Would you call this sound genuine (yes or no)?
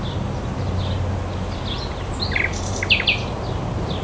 yes